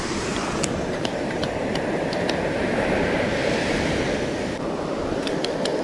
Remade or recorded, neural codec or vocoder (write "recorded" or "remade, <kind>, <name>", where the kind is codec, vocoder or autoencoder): remade, vocoder, BigVGAN v2